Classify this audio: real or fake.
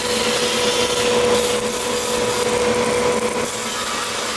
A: real